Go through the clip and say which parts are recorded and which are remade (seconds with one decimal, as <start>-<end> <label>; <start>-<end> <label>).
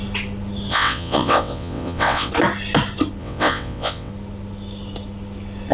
0.0-0.7 recorded; 0.7-2.3 remade; 2.3-3.2 recorded; 3.2-4.1 remade; 4.1-5.7 recorded